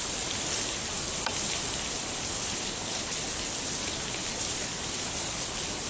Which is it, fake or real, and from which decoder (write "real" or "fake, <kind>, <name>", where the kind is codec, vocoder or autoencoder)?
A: real